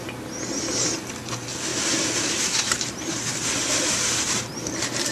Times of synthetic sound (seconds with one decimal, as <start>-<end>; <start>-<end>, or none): 1.7-5.1